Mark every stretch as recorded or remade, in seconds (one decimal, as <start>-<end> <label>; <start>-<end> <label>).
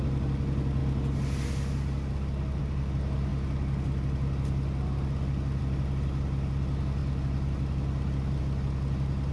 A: 0.0-9.3 recorded